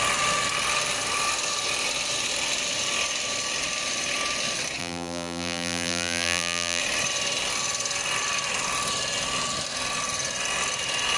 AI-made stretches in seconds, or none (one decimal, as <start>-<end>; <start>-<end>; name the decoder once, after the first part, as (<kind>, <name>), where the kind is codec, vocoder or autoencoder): 4.8-6.8 (vocoder, BigVGAN v2)

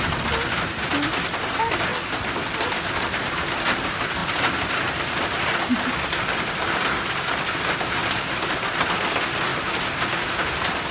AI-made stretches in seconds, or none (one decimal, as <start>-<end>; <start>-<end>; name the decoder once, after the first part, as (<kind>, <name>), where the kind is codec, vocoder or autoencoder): 1.9-2.8 (vocoder, BigVGAN v2); 8.0-8.5; 9.5-10.9

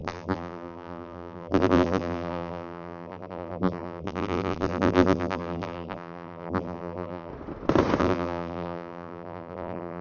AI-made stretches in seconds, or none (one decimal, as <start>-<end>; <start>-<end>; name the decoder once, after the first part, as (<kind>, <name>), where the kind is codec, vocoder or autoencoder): 0.0-7.3 (vocoder, BigVGAN v2); 8.0-10.0

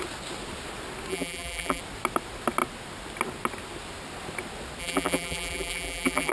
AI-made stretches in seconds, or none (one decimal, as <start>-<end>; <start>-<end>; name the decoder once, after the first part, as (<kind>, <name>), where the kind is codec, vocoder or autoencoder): 1.1-1.8 (vocoder, BigVGAN v2); 4.8-6.3

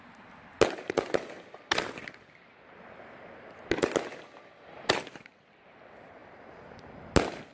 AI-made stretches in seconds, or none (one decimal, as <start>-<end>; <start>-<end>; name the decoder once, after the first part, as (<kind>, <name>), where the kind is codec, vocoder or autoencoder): none